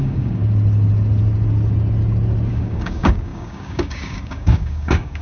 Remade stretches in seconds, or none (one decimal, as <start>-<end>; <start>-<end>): 0.0-0.4; 2.5-5.2